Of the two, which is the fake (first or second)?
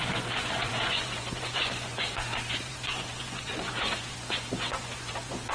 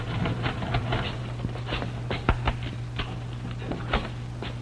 first